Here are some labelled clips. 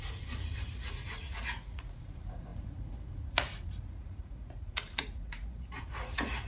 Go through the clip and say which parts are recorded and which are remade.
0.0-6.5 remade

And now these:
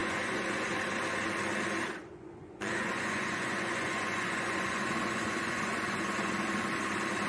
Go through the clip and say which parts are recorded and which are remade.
0.0-0.8 remade; 0.8-2.0 recorded; 2.0-6.3 remade; 6.3-7.3 recorded

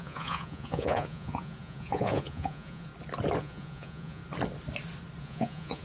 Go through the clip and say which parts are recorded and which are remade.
0.0-2.9 remade; 2.9-3.4 recorded; 3.4-4.2 remade; 4.2-5.2 recorded; 5.2-5.8 remade